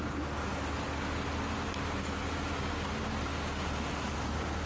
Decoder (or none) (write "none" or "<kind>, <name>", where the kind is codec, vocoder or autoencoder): none